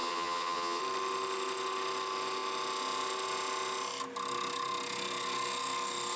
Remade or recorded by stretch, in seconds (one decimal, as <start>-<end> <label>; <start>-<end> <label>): 0.0-0.8 remade; 0.8-6.2 recorded